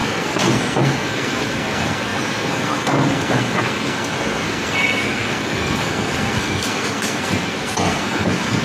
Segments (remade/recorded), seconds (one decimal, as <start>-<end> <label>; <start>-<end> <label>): 0.0-8.6 remade